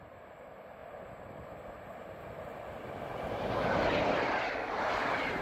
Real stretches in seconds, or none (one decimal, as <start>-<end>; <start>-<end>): 0.0-0.8; 4.0-5.4